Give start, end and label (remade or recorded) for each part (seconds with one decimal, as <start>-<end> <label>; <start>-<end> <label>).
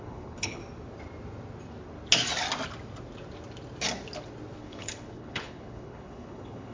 0.0-0.6 remade; 0.6-4.6 recorded; 4.6-6.7 remade